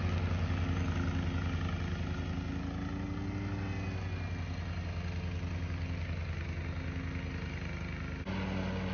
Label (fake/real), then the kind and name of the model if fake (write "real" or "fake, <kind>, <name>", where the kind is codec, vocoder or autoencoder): real